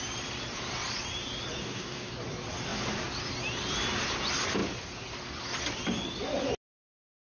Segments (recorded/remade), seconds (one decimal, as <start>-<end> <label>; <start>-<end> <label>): 0.0-1.6 recorded; 1.6-2.1 remade; 2.1-7.3 recorded